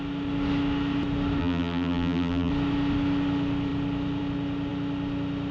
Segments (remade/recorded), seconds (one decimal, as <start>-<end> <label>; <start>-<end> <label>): 0.0-1.4 recorded; 1.4-2.5 remade; 2.5-5.5 recorded